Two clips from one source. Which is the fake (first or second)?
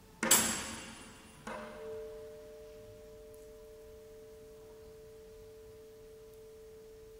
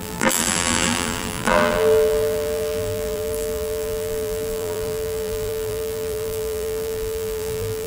second